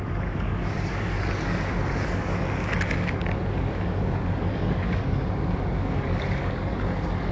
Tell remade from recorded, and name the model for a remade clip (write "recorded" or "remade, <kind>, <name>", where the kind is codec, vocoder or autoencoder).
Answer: remade, codec, DAC